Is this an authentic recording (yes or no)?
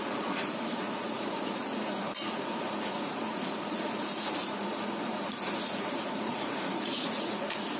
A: no